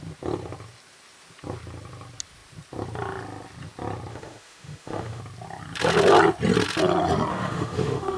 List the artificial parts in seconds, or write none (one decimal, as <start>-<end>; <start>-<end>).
4.1-5.2; 7.3-8.2